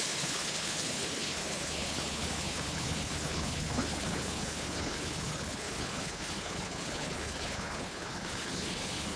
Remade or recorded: remade